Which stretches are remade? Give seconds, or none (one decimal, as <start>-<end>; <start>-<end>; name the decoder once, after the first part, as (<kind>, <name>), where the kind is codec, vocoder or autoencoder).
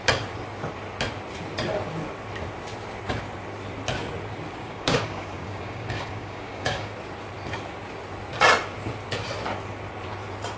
4.6-6.9 (codec, DAC)